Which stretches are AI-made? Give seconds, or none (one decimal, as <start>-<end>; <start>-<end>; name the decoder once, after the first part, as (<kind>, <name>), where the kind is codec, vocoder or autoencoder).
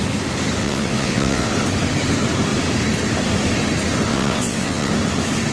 0.6-1.5 (vocoder, WaveNeXt); 4.1-4.9